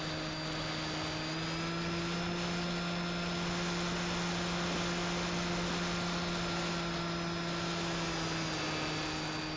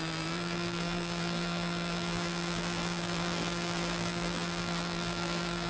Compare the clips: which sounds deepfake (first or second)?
second